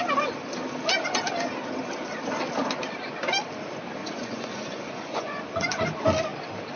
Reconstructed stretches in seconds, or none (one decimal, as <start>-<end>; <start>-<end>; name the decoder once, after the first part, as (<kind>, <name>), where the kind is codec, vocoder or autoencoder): 4.0-5.4 (vocoder, Vocos)